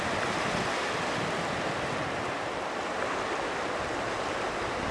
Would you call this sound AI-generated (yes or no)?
no